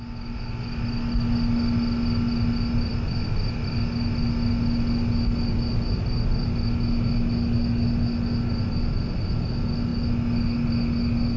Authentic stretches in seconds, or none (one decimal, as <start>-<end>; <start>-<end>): 0.0-11.4

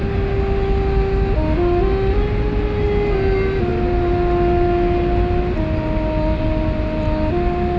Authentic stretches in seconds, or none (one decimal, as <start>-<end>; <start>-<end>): 0.0-7.8

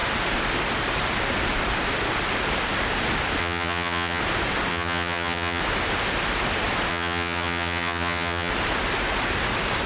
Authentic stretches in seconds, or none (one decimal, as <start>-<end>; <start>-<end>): 0.0-3.4; 4.2-4.7; 5.6-6.9; 8.5-9.9

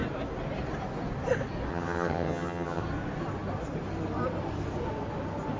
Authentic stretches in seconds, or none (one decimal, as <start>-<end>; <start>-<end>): 0.0-1.7; 2.8-5.6

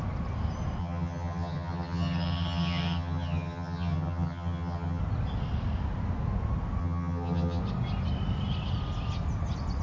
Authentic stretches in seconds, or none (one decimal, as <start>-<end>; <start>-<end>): 0.0-0.8; 5.0-6.8; 7.6-9.8

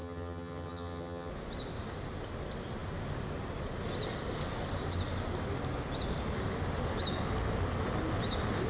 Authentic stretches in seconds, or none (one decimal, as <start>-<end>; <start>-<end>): 1.3-8.7